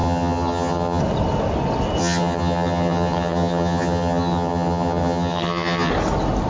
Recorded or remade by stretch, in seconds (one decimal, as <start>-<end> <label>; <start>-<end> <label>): 0.0-1.0 remade; 1.0-2.0 recorded; 2.0-5.9 remade; 5.9-6.5 recorded